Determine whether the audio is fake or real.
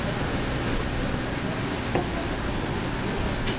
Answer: real